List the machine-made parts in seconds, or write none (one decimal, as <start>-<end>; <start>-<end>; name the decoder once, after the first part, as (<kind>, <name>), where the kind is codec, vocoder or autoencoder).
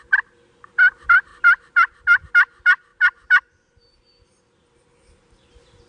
1.3-2.3 (vocoder, BigVGAN v2); 2.9-3.4